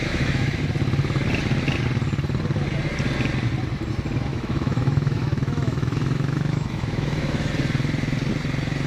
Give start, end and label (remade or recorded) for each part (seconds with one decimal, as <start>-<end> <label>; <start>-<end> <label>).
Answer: 0.0-0.6 remade; 0.6-4.3 recorded; 4.3-7.5 remade; 7.5-8.9 recorded